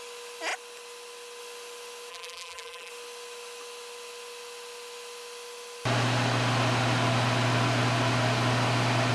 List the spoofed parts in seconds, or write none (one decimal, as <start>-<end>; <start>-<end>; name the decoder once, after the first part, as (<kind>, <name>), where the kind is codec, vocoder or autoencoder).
2.1-2.9 (vocoder, BigVGAN v2)